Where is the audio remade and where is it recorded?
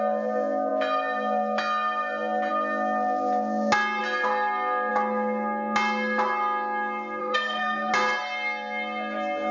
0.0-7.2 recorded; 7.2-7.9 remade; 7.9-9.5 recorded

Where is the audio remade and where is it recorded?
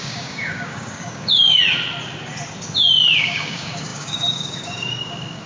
0.0-1.6 remade; 1.6-3.2 recorded; 3.2-5.5 remade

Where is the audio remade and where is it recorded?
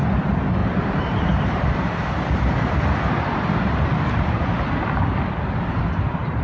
0.0-0.6 recorded; 0.6-4.4 remade; 4.4-6.4 recorded